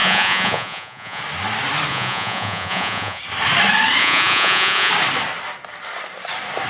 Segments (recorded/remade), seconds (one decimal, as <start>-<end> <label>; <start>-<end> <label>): 0.0-1.2 remade; 1.2-1.9 recorded; 1.9-3.2 remade; 3.2-4.0 recorded; 4.0-4.9 remade; 4.9-6.7 recorded